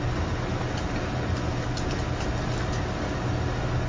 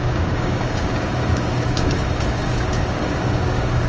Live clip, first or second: first